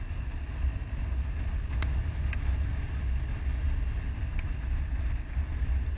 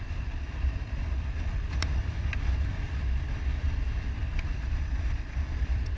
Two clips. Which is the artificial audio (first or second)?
second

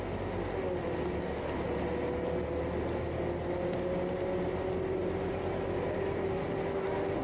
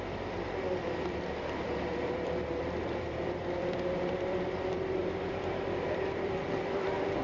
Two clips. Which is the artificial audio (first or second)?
second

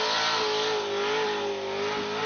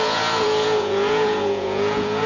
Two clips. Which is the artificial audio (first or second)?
second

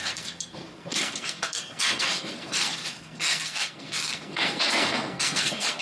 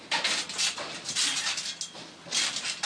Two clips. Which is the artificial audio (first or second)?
first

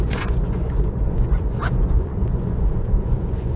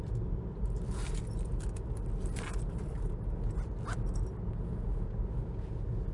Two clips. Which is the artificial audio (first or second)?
first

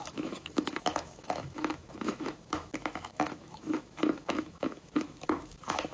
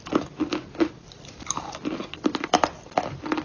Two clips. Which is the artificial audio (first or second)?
first